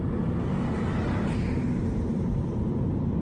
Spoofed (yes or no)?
yes